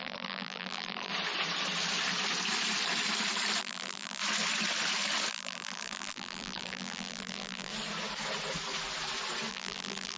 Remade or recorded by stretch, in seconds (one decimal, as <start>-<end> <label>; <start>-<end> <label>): 0.0-1.1 remade; 1.1-3.6 recorded; 3.6-4.2 remade; 4.2-5.3 recorded; 5.3-7.7 remade; 7.7-9.5 recorded; 9.5-10.2 remade